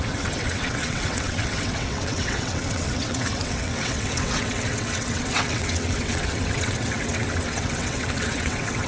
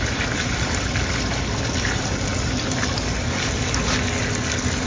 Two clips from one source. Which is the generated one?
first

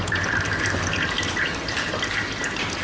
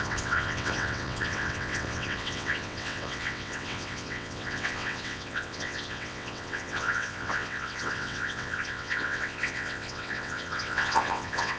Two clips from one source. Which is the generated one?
second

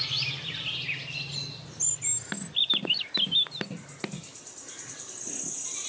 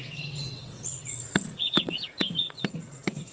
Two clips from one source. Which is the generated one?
second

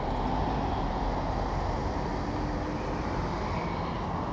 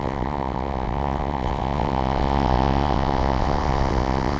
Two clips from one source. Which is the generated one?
second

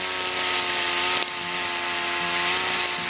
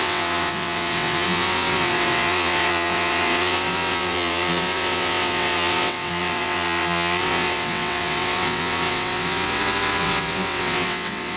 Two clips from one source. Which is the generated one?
second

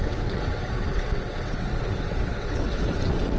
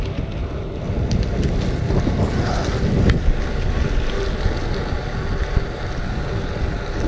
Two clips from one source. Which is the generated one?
first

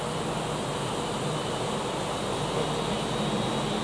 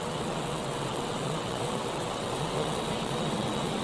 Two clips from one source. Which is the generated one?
second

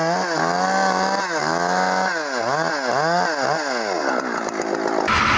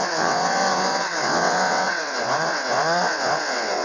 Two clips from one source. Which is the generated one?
second